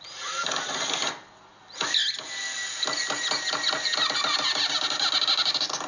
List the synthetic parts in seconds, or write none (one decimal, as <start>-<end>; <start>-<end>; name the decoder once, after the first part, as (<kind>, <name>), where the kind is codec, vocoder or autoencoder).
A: none